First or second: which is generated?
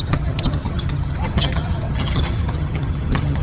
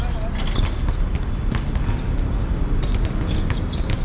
first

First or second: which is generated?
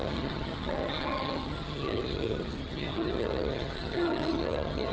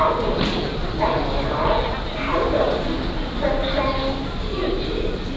first